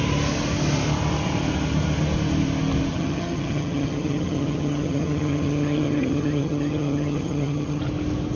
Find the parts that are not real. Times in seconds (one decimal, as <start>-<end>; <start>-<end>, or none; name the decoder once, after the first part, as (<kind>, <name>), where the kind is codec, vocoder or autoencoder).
2.9-7.8 (vocoder, HiFi-GAN)